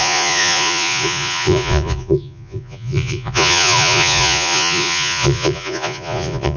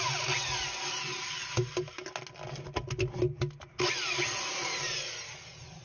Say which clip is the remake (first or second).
first